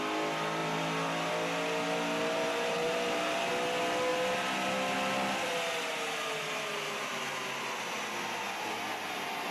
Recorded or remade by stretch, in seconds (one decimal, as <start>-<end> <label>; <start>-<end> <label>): 0.0-2.2 recorded; 2.2-3.5 remade; 3.5-9.5 recorded

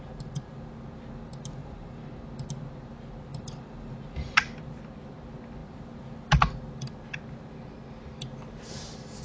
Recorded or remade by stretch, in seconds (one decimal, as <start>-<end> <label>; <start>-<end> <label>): 0.0-1.6 recorded; 1.6-2.2 remade; 2.2-3.3 recorded; 3.3-4.3 remade; 4.3-9.2 recorded